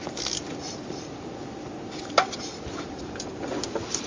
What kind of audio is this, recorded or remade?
recorded